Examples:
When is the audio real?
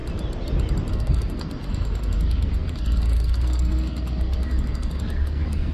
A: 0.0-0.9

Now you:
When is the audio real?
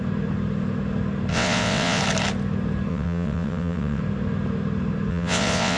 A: 0.0-1.3; 2.0-2.9; 4.0-5.1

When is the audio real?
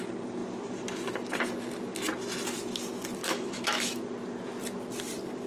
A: 0.0-3.2; 4.0-5.5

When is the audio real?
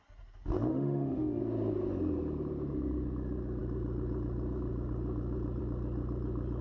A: 0.0-0.7; 1.4-6.6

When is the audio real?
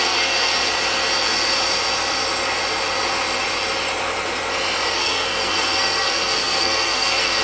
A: 0.5-4.9